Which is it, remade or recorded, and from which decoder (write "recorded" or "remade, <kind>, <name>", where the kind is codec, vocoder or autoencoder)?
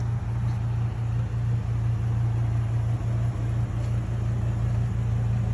recorded